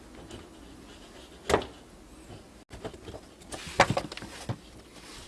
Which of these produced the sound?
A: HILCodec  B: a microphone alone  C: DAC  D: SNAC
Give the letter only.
B